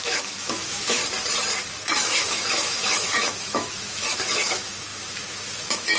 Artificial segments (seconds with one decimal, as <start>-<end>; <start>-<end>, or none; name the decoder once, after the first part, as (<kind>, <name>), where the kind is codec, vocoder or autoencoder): 0.0-1.0 (autoencoder, DAC-VAE); 1.9-6.0

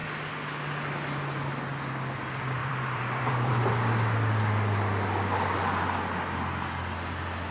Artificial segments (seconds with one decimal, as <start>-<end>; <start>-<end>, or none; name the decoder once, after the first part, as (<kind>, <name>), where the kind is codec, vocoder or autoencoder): 2.6-3.5 (vocoder, BigVGAN v2)